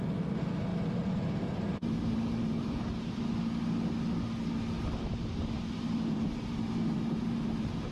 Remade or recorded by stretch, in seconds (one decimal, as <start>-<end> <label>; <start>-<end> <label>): 0.0-0.7 recorded; 0.7-3.2 remade; 3.2-5.1 recorded; 5.1-7.9 remade